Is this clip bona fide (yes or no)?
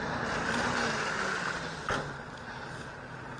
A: yes